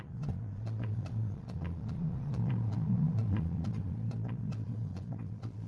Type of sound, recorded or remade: remade